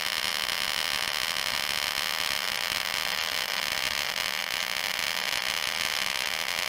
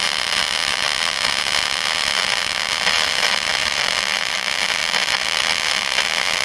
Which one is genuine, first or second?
first